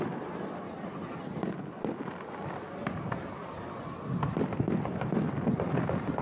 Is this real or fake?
real